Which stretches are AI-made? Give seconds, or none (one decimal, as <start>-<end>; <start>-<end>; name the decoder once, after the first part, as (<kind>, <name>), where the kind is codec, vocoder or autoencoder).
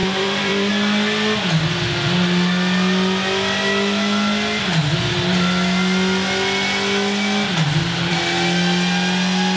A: 0.0-0.7 (vocoder, BigVGAN v2)